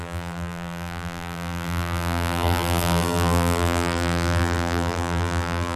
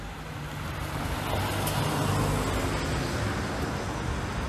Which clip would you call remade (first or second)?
first